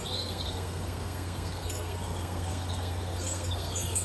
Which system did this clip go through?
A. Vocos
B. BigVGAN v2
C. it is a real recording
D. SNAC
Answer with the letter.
D